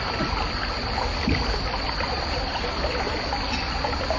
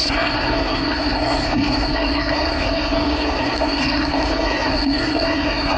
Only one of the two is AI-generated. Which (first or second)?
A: second